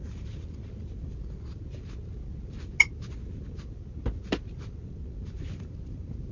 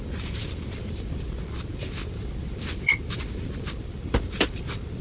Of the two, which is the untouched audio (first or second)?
first